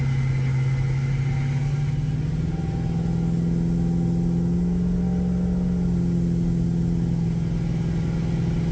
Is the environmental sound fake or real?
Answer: real